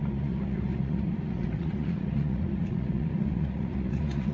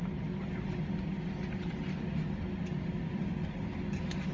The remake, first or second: first